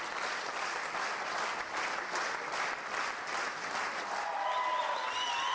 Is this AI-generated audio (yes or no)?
no